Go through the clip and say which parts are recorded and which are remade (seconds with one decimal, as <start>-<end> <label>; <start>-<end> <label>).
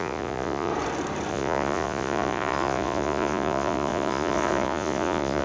0.0-0.7 remade; 0.7-1.3 recorded; 1.3-5.4 remade